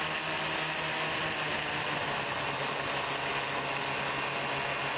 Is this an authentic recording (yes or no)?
yes